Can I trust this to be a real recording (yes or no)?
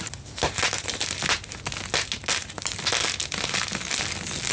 yes